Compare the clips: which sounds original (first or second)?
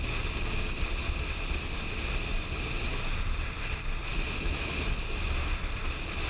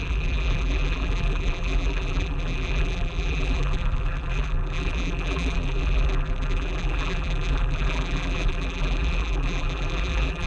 first